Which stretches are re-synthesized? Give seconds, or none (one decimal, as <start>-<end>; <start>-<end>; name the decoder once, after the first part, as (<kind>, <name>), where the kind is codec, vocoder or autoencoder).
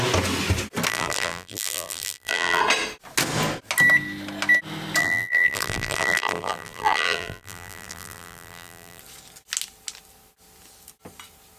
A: 0.9-2.6 (vocoder, BigVGAN v2); 5.0-9.0